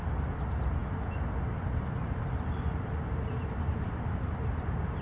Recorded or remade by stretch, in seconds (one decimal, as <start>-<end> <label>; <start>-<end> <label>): 0.0-5.0 recorded